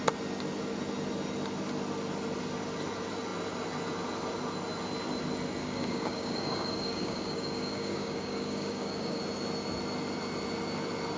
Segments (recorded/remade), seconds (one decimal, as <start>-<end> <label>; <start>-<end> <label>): 0.0-5.6 recorded; 5.6-9.2 remade; 9.2-11.2 recorded